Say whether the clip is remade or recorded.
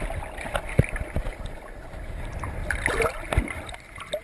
recorded